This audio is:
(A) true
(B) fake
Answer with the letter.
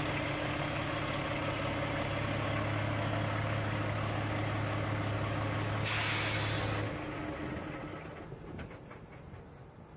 A